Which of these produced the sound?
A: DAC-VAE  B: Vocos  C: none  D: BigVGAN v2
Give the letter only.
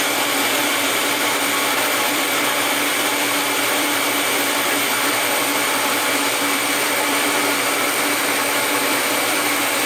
D